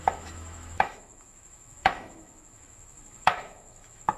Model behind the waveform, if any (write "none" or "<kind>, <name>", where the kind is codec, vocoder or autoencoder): autoencoder, DAC-VAE